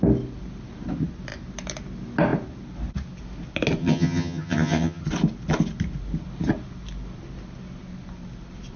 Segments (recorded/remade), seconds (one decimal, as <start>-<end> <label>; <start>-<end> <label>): 0.0-3.8 recorded; 3.8-5.0 remade; 5.0-8.8 recorded